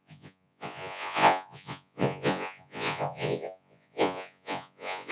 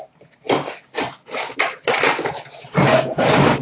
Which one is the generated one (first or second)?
first